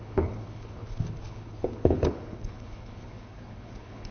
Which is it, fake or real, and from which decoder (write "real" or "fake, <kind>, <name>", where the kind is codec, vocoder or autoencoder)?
fake, codec, HILCodec